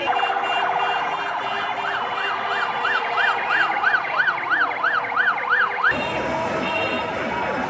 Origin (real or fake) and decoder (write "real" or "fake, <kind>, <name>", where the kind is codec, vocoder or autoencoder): fake, vocoder, BigVGAN v2